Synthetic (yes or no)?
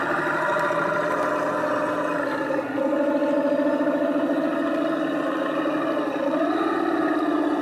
no